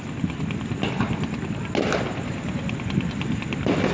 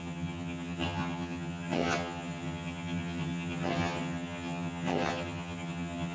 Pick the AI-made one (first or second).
second